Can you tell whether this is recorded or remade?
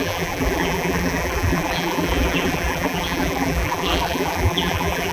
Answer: remade